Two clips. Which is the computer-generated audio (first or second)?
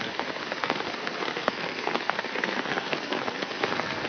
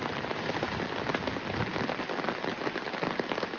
first